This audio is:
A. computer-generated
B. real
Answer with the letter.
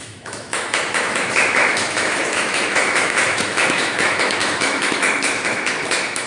A